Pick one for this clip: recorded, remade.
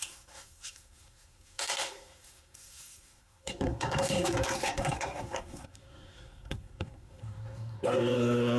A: remade